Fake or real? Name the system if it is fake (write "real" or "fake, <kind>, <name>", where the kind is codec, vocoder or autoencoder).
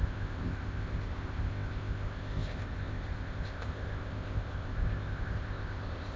fake, codec, ZipCodec